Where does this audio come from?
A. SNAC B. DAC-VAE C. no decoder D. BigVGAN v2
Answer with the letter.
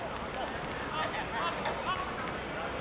C